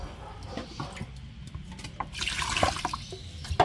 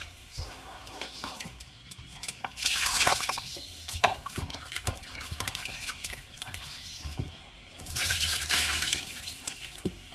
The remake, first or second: second